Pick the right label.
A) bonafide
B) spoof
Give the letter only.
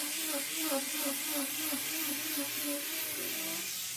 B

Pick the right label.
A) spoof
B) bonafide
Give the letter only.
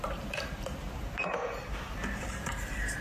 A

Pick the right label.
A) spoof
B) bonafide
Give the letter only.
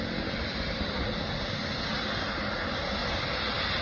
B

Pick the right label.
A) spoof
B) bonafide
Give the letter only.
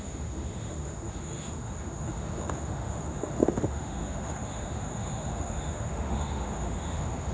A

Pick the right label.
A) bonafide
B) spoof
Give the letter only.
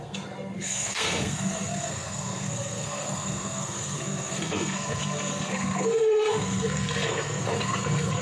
B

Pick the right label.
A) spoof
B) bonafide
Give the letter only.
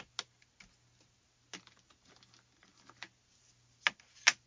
B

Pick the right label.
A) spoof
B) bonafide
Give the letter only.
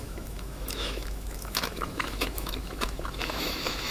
A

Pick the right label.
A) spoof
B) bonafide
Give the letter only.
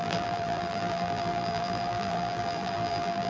A